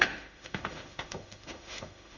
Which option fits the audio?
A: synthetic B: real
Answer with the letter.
A